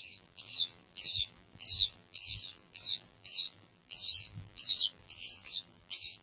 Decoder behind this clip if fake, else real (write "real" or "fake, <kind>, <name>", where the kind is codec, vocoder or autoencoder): fake, vocoder, BigVGAN v2